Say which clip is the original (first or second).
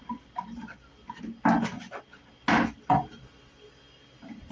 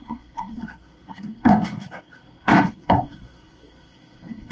first